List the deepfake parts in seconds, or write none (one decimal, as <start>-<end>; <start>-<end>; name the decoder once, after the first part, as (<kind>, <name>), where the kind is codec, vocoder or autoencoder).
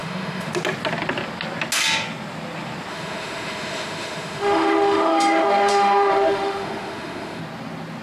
0.0-0.5 (autoencoder, DAC-VAE); 2.9-7.4